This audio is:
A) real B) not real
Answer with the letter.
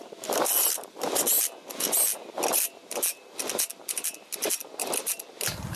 A